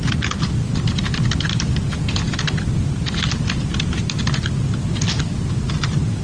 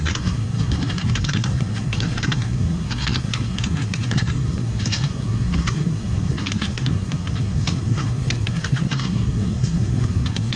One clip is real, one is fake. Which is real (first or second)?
first